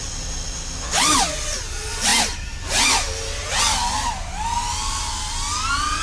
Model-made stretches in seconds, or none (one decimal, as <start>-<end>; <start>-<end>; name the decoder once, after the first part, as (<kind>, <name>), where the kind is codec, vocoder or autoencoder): none